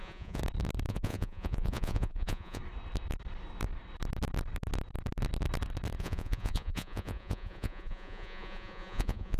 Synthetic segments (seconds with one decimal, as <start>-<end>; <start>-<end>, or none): 0.0-0.4; 0.9-2.6; 6.0-9.4